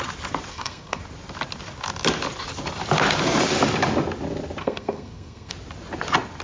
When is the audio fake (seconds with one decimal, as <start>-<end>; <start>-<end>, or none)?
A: 0.5-1.0; 4.6-5.5

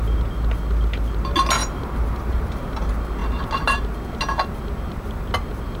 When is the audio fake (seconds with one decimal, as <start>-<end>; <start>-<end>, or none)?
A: 1.6-2.8